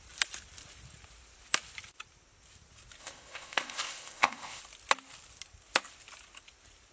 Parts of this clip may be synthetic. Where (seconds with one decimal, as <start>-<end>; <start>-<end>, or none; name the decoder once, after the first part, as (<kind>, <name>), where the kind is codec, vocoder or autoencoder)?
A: 3.0-4.6 (codec, ZipCodec)